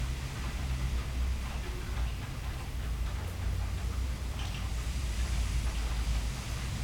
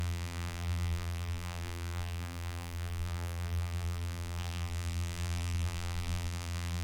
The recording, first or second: first